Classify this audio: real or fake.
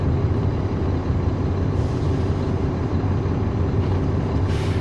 fake